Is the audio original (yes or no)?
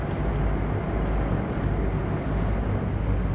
yes